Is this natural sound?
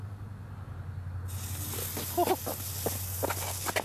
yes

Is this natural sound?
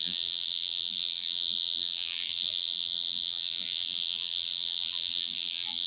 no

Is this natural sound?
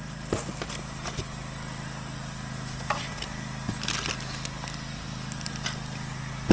yes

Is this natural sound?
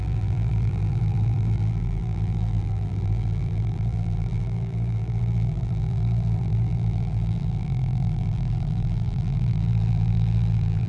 no